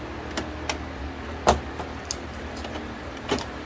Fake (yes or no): no